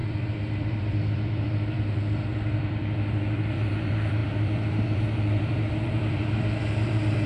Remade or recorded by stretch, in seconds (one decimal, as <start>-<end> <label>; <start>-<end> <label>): 0.0-7.3 remade